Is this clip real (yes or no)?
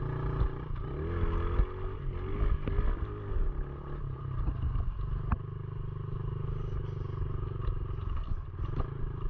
yes